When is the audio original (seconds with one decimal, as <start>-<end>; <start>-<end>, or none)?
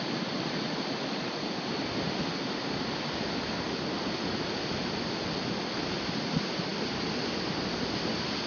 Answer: 0.0-8.5